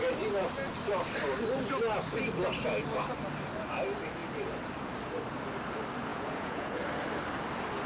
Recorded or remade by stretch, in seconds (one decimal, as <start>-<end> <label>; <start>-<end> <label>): 0.0-6.1 recorded; 6.1-6.8 remade; 6.8-7.9 recorded